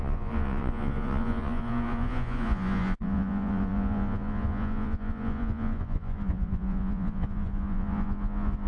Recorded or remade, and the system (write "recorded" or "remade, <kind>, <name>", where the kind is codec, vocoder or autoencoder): remade, vocoder, Vocos